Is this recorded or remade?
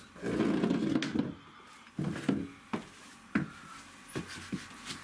recorded